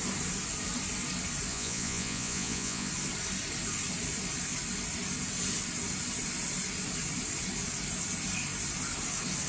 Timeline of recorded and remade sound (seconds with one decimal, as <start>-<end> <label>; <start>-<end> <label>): 0.0-1.5 recorded; 1.5-2.9 remade; 2.9-9.5 recorded

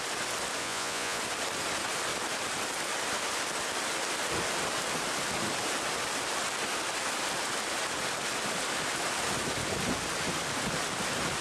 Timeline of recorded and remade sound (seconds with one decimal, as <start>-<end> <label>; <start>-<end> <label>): 0.0-0.6 recorded; 0.6-1.2 remade; 1.2-11.4 recorded